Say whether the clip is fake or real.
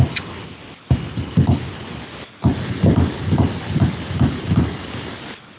real